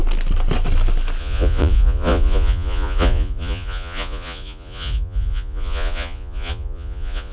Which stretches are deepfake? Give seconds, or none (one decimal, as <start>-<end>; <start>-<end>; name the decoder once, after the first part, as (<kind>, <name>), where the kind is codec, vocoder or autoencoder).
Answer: 1.2-7.3 (vocoder, Vocos)